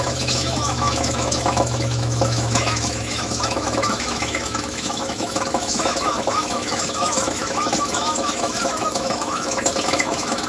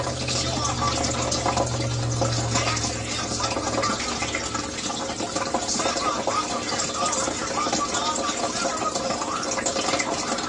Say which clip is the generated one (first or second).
first